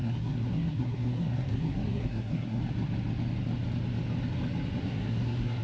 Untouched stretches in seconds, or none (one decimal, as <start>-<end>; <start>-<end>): 2.6-4.8

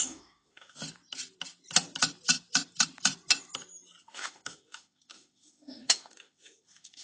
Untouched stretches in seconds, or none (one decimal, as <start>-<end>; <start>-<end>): 0.8-4.0

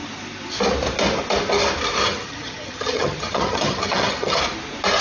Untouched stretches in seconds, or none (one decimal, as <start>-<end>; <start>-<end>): 0.0-2.0; 4.4-5.0

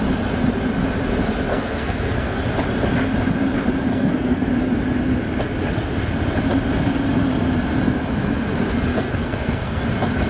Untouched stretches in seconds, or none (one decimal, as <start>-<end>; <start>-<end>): 0.0-1.5; 2.4-3.9; 4.5-8.9; 9.8-10.3